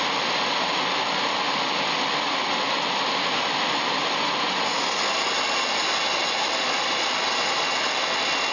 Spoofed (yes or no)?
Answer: no